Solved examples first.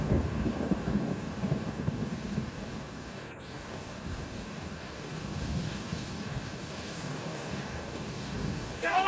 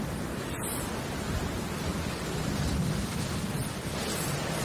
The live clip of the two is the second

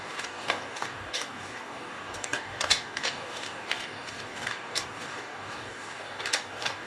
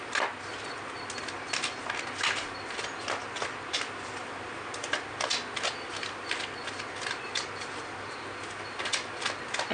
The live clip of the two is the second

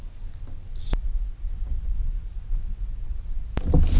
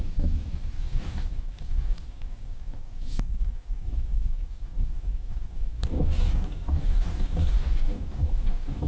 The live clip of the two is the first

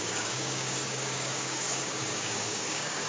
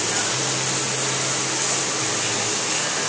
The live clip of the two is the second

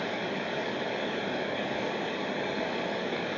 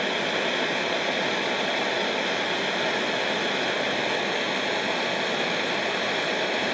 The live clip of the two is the second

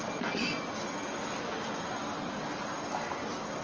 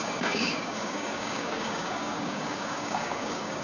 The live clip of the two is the first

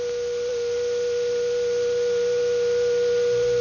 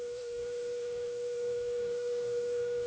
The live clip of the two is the first